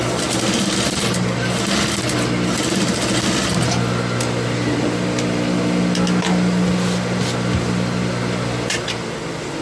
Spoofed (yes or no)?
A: no